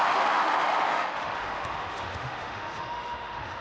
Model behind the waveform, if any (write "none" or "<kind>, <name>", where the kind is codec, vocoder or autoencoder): autoencoder, DAC-VAE